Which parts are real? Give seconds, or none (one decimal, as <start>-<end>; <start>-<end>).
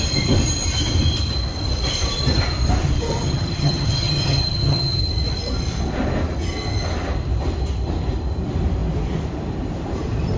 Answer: 0.0-3.1; 5.0-10.4